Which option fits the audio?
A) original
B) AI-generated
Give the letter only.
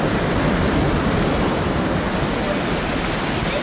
A